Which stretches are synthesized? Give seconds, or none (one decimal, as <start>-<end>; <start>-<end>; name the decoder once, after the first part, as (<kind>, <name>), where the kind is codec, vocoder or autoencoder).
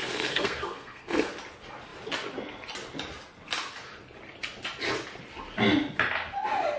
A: 0.0-1.3 (codec, SNAC)